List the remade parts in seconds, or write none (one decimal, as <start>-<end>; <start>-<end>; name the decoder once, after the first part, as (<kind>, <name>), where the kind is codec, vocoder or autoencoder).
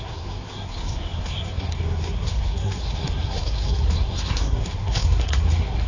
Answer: 0.0-5.9 (codec, SNAC)